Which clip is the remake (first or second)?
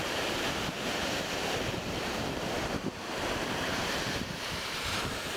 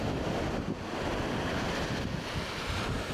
first